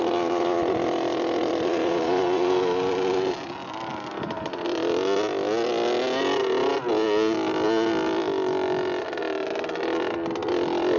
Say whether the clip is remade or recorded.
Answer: recorded